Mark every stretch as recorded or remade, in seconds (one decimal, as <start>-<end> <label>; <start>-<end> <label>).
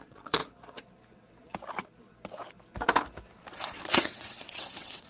0.0-0.4 remade; 0.4-3.5 recorded; 3.5-5.1 remade